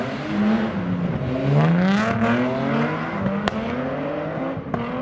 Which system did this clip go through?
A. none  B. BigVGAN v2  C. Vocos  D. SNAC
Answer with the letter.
A